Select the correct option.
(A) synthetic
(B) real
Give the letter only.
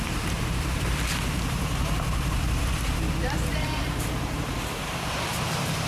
A